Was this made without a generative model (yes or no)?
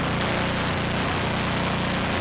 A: yes